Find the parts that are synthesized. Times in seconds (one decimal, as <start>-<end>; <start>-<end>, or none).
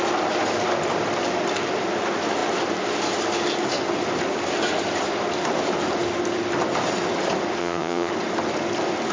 7.6-8.1